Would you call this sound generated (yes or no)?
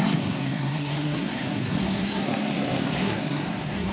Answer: yes